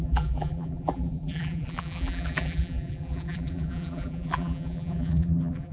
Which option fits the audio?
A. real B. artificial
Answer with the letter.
B